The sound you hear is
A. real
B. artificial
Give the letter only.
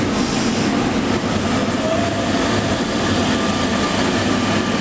A